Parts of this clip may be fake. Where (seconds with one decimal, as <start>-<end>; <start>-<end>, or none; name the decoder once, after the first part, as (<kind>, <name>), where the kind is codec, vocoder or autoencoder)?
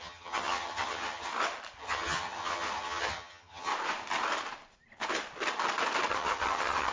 0.0-1.3 (vocoder, HiFi-GAN); 1.8-3.7; 6.1-6.9